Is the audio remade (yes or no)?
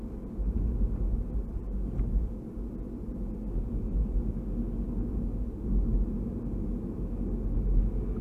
no